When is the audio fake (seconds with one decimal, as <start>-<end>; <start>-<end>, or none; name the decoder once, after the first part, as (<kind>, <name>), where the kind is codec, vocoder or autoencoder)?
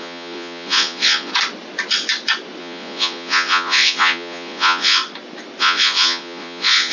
0.0-1.3 (vocoder, Vocos); 2.6-5.0; 5.6-6.9